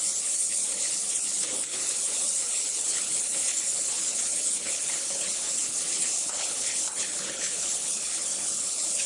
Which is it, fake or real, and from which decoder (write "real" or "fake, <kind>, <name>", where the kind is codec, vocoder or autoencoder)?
fake, codec, HILCodec